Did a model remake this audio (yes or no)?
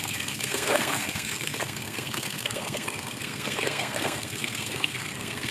yes